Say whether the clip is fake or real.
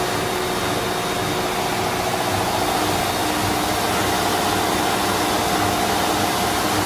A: real